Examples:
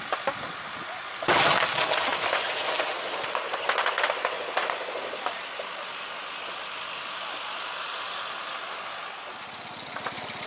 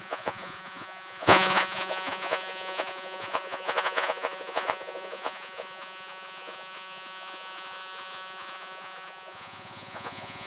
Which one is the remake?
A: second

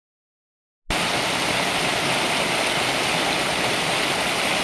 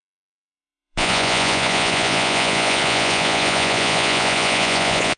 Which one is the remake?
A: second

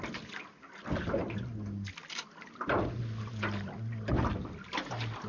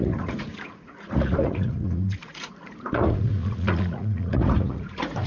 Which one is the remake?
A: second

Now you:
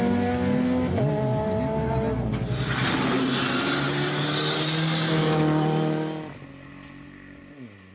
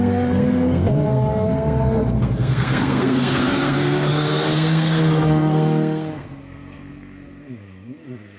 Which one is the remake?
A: second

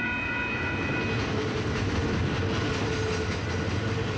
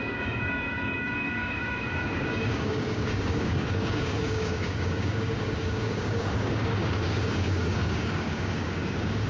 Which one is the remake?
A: second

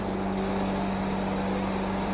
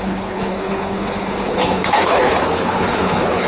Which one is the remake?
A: second